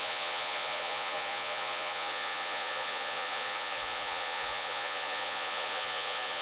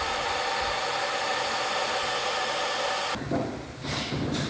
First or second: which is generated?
first